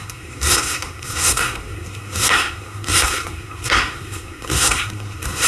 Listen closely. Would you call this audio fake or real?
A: fake